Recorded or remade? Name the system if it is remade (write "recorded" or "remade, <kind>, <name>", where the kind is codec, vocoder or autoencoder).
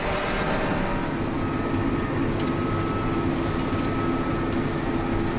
recorded